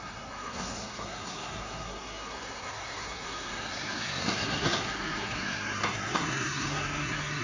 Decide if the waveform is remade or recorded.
remade